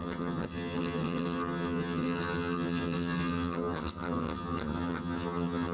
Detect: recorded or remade remade